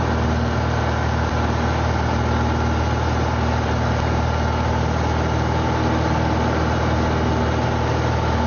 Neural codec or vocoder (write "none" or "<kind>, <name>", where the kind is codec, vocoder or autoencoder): none